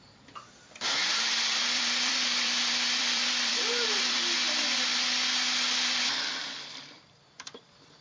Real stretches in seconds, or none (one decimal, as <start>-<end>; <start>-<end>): 4.9-6.6

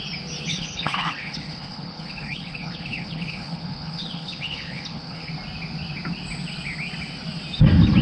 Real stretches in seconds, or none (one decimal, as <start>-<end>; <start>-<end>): 0.0-0.5; 5.3-8.0

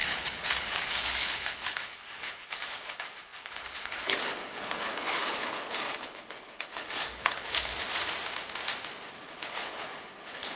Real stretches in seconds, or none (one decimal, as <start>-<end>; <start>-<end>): 7.7-9.1

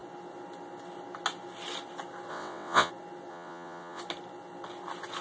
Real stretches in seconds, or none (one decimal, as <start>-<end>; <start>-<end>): 0.0-2.3; 2.9-3.3; 4.0-5.2

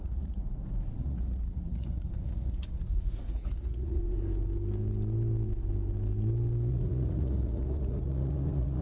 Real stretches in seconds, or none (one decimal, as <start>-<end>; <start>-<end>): 0.4-1.0; 4.0-6.7